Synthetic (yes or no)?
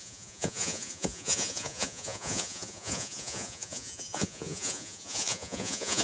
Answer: yes